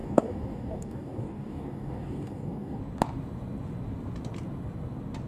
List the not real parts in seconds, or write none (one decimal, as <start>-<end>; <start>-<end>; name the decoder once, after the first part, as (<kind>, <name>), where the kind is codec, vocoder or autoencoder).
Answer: 0.0-2.8 (codec, DAC)